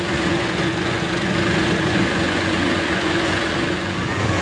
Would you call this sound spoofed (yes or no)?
yes